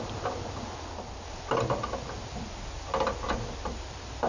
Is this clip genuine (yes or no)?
yes